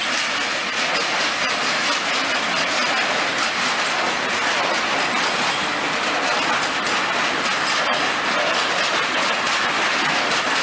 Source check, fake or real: real